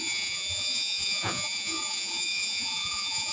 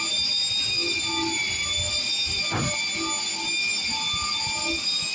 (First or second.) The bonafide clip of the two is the second